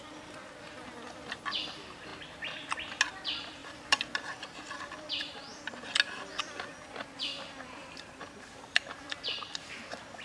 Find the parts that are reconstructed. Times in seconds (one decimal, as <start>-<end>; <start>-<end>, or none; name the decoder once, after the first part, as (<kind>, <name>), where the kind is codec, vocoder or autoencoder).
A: 3.6-5.3 (vocoder, BigVGAN v2); 7.8-9.0